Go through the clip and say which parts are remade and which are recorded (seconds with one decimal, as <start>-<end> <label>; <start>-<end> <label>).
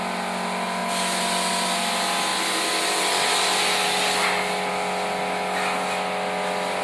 0.0-6.8 recorded